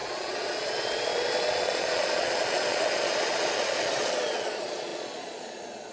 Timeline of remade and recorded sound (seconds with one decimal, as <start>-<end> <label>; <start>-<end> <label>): 0.0-5.9 remade